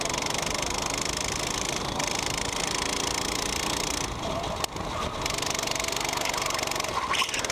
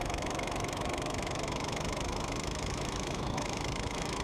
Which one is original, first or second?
first